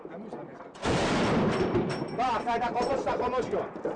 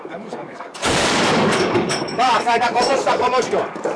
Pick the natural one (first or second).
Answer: first